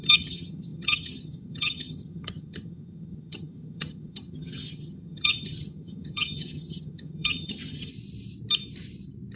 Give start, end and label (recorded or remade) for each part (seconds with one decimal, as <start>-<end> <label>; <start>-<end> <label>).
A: 0.0-7.9 remade; 7.9-9.4 recorded